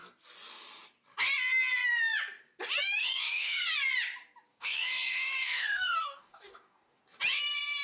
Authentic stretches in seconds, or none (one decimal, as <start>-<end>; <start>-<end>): 0.0-3.0; 3.6-4.5; 7.0-7.8